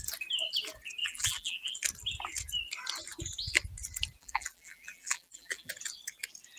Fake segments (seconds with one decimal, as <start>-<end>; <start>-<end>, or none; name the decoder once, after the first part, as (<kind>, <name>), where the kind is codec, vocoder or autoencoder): 1.0-1.7 (vocoder, BigVGAN v2); 4.2-5.7